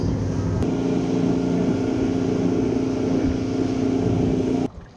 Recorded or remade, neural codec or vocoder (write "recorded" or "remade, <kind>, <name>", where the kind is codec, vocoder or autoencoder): recorded